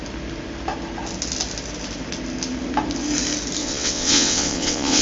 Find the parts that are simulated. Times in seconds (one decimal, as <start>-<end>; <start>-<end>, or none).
3.6-5.0